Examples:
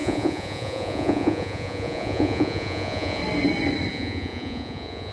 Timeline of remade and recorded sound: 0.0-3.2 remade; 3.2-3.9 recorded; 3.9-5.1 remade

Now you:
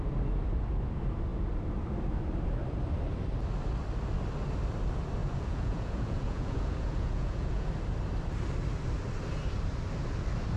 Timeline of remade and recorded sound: 0.0-5.2 recorded; 5.2-7.7 remade; 7.7-10.6 recorded

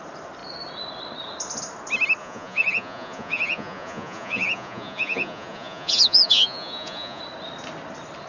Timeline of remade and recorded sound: 0.0-2.2 recorded; 2.2-7.2 remade; 7.2-8.3 recorded

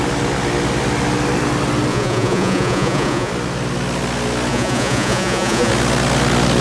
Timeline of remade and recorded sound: 0.0-1.9 recorded; 1.9-3.3 remade; 3.3-4.5 recorded; 4.5-5.7 remade; 5.7-6.6 recorded